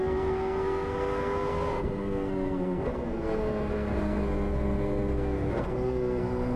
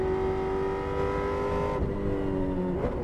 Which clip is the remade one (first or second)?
first